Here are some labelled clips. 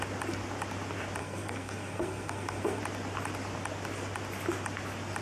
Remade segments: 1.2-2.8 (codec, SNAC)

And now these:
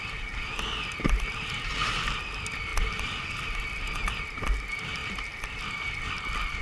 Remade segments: 5.0-5.6 (vocoder, BigVGAN v2)